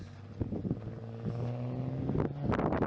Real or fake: real